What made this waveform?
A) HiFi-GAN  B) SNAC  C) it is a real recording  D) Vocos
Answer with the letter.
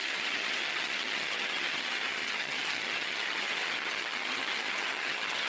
A